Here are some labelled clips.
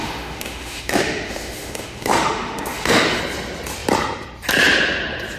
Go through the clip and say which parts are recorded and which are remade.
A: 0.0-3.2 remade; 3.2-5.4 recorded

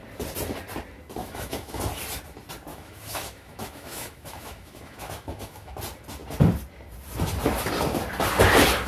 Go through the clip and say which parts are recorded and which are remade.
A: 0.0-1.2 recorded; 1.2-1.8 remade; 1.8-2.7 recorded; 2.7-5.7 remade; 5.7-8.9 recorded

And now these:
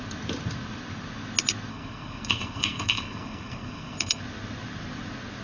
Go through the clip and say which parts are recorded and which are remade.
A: 0.0-1.7 recorded; 1.7-4.2 remade; 4.2-5.4 recorded

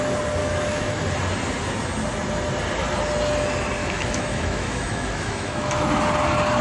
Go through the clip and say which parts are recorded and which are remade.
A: 0.0-0.4 recorded; 0.4-1.0 remade; 1.0-3.8 recorded; 3.8-5.9 remade; 5.9-6.6 recorded